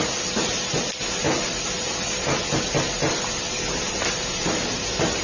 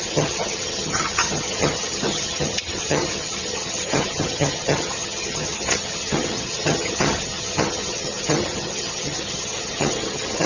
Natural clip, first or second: first